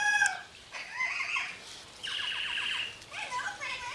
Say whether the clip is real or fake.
real